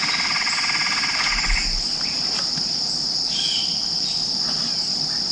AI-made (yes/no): no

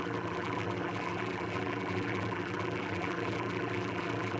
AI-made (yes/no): yes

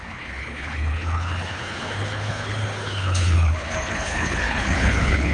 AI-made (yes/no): yes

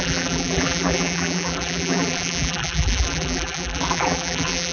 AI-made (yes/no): yes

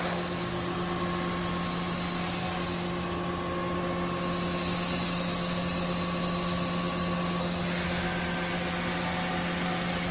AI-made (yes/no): no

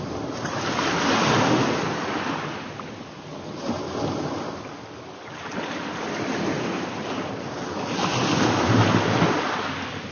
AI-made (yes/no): no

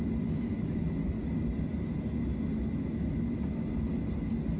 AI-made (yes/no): no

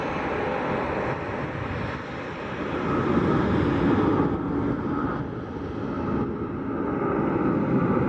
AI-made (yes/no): no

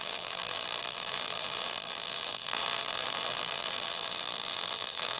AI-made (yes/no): yes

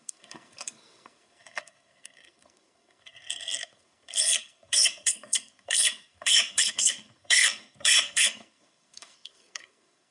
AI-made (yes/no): yes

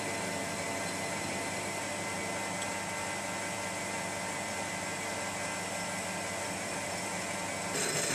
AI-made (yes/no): no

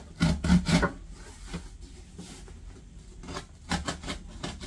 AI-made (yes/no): no